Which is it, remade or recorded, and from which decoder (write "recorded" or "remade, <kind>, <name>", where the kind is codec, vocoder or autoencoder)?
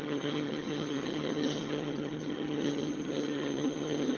remade, vocoder, HiFi-GAN